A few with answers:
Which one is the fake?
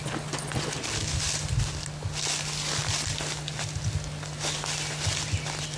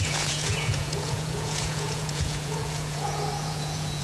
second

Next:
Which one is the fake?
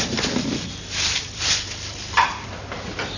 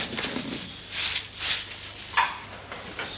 first